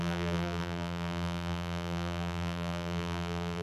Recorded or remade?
remade